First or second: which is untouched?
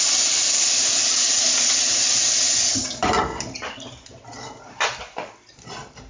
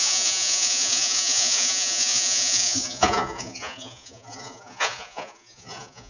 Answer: first